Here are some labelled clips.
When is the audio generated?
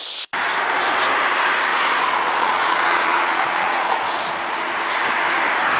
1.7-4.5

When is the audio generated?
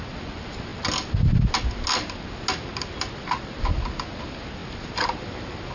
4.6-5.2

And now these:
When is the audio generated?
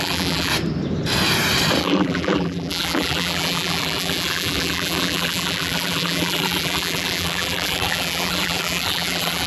0.0-0.5; 1.8-9.5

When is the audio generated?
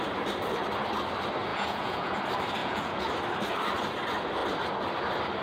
1.5-2.2; 2.6-3.1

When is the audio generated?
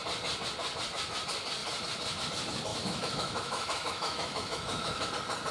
2.7-5.1